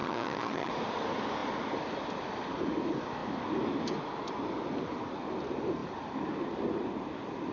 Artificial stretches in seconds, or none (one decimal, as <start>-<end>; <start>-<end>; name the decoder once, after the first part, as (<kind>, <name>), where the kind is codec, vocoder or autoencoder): 0.0-0.7 (vocoder, HiFi-GAN)